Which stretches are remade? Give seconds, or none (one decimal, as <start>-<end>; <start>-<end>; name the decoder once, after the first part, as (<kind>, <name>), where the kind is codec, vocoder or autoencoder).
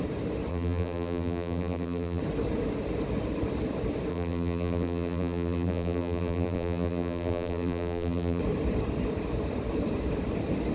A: 0.5-2.2 (vocoder, BigVGAN v2); 4.1-8.4